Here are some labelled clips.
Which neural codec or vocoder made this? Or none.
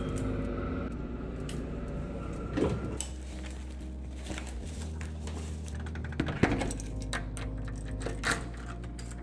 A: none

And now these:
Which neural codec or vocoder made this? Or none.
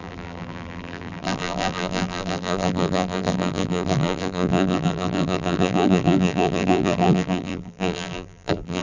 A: vocoder, BigVGAN v2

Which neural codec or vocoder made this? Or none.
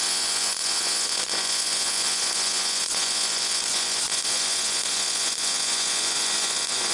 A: vocoder, Vocos